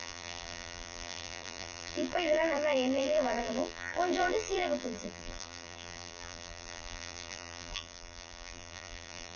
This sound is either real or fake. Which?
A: fake